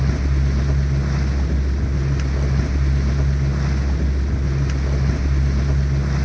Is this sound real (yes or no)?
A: yes